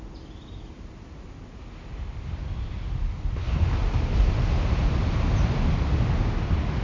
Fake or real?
real